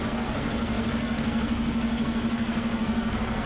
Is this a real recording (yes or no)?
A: no